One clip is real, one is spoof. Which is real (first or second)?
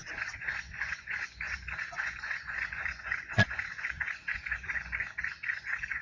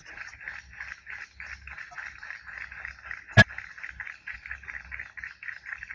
second